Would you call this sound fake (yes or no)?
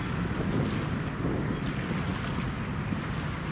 no